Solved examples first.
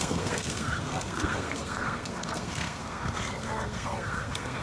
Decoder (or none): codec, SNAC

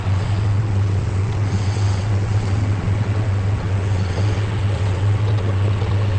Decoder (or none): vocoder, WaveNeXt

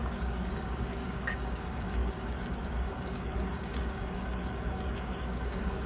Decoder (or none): codec, DAC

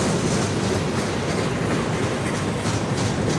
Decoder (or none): none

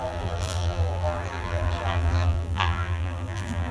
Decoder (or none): vocoder, BigVGAN v2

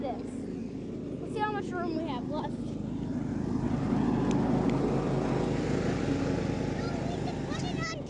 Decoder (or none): none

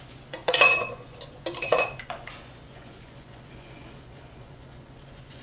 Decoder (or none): vocoder, Vocos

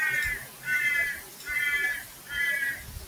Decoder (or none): none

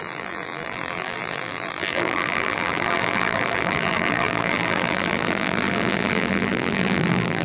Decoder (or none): vocoder, BigVGAN v2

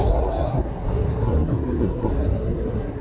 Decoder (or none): codec, SNAC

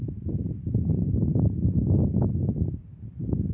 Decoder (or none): none